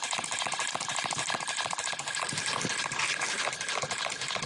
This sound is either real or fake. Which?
real